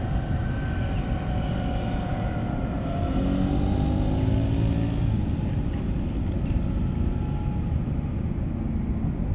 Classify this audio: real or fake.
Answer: real